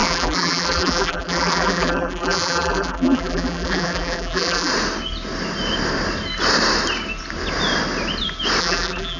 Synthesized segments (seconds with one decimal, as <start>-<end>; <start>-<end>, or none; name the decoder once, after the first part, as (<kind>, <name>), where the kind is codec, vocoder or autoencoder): 0.0-4.7 (vocoder, BigVGAN v2); 8.6-9.2